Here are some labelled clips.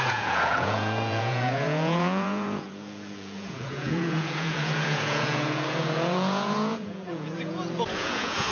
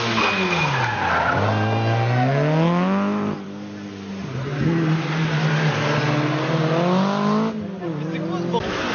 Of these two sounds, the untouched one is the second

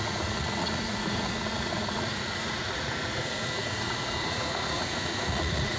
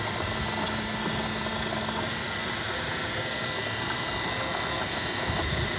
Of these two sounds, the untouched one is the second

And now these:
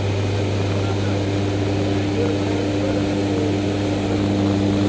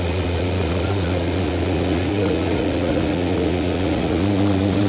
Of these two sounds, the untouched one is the first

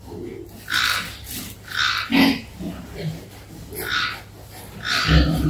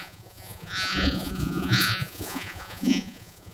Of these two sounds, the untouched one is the first